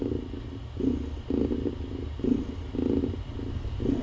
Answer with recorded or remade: recorded